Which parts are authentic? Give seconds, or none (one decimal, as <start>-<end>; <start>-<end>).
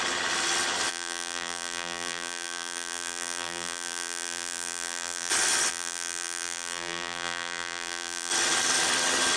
0.0-0.9; 5.3-5.7; 8.3-9.4